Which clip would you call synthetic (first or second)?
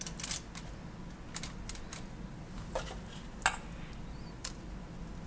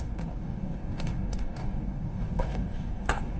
second